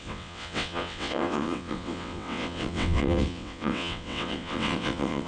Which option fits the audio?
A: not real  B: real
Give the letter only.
A